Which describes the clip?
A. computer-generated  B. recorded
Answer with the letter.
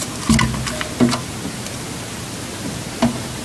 B